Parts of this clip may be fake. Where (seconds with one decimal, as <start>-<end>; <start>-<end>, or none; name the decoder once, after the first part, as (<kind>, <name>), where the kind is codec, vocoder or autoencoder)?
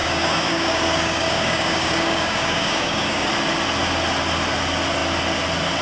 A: 0.0-3.3 (codec, DAC)